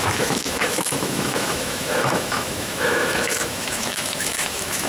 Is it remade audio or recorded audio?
remade